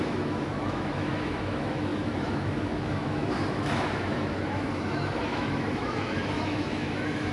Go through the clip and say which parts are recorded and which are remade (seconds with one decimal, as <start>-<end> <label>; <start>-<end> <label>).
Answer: 0.0-7.3 remade